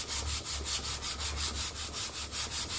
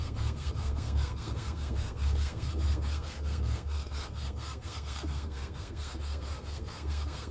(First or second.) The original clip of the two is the first